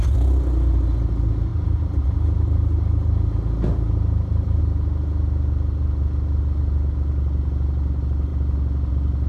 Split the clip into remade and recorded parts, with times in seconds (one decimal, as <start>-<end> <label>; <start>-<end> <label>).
0.0-9.3 recorded